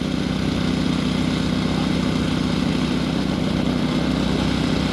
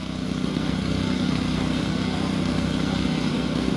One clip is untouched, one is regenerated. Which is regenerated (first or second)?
second